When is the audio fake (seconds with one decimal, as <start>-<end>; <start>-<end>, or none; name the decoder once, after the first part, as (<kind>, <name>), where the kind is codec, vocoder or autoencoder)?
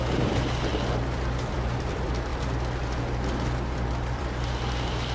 0.0-0.7 (vocoder, BigVGAN v2); 1.5-2.3; 3.9-5.1